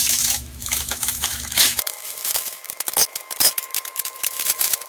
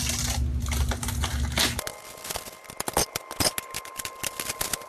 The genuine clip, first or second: second